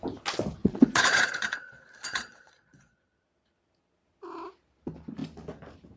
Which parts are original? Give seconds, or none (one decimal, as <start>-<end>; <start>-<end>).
0.0-0.6; 4.2-6.0